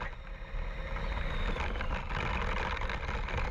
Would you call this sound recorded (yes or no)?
yes